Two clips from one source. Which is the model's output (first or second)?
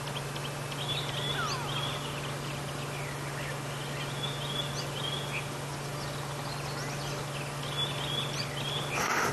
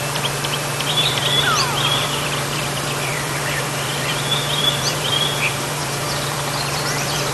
second